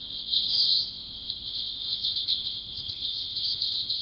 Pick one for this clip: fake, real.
fake